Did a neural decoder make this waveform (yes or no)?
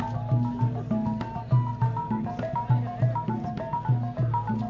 no